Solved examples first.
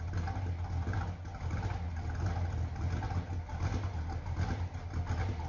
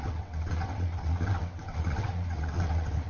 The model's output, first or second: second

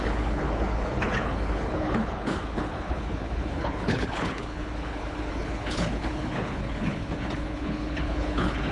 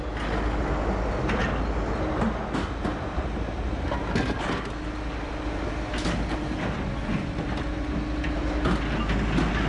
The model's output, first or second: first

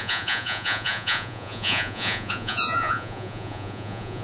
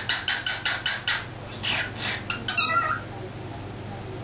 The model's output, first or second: first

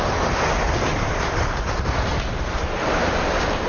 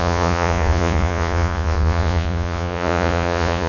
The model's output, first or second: second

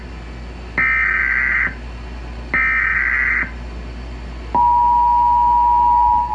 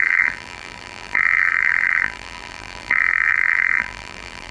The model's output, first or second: second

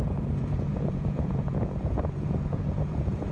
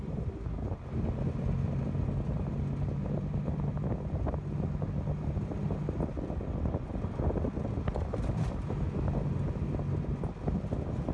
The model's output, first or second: first